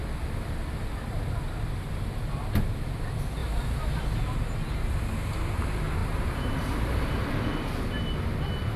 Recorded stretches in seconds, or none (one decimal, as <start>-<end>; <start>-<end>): 0.0-3.4; 4.0-6.0; 7.3-8.8